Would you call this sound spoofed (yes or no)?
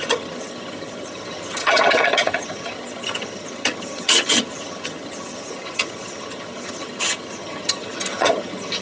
yes